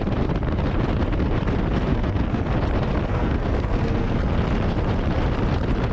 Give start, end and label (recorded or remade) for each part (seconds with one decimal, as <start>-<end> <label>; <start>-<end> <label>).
0.0-1.9 recorded; 1.9-2.4 remade; 2.4-3.1 recorded; 3.1-4.2 remade; 4.2-5.9 recorded